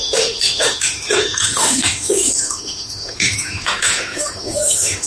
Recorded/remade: remade